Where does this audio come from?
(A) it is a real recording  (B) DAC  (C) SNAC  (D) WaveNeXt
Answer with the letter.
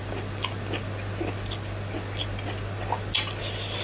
A